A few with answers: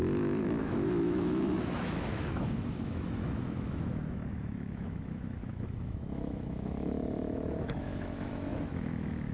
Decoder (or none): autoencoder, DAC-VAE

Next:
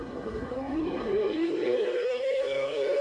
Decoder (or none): codec, SNAC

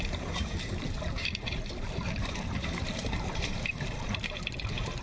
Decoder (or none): vocoder, BigVGAN v2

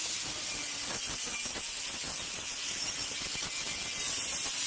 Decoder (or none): none